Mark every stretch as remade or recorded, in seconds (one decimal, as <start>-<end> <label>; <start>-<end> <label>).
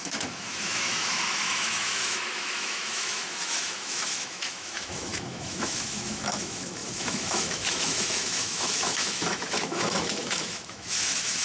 0.0-11.4 remade